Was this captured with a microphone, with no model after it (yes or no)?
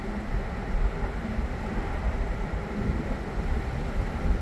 yes